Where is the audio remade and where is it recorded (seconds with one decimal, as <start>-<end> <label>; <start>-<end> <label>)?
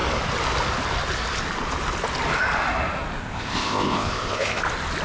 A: 0.0-3.2 recorded; 3.2-4.6 remade; 4.6-5.0 recorded